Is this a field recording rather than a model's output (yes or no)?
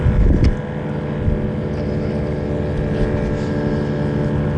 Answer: yes